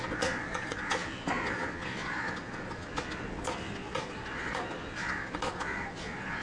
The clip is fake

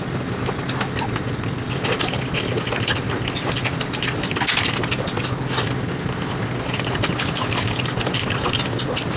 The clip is real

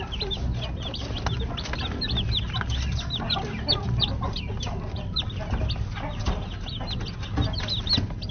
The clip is real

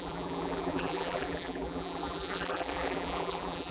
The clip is fake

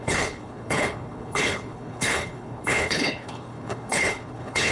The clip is fake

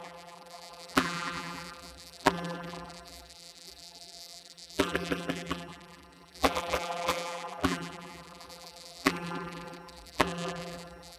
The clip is fake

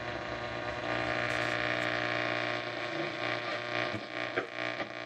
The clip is real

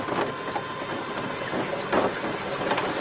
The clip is real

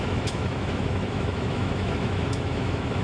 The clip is fake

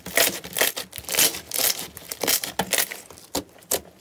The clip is real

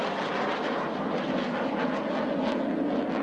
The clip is real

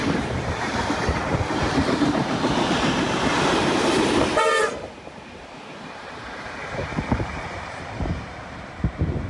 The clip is fake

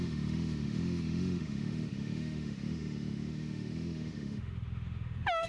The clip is fake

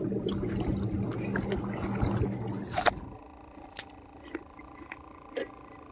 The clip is real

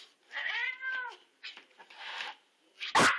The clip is real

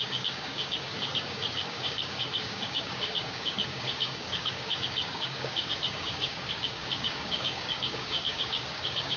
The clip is fake